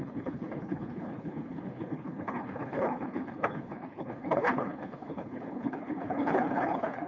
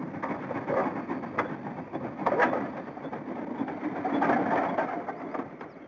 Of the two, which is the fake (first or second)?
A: first